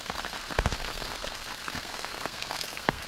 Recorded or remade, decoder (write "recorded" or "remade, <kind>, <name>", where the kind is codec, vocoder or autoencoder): remade, codec, SNAC